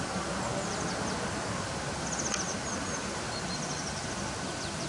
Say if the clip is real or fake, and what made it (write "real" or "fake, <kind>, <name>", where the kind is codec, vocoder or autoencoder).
real